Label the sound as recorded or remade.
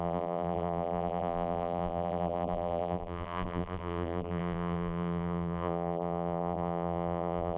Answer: remade